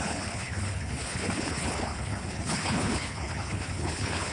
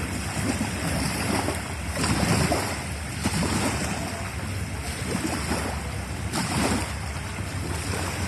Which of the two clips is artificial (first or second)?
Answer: first